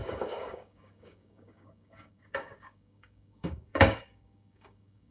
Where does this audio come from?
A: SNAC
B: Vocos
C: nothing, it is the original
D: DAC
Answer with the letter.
D